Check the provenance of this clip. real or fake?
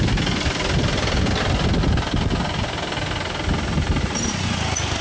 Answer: real